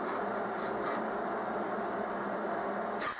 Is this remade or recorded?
recorded